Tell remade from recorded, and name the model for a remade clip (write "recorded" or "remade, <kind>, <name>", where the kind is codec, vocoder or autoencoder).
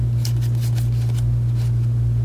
recorded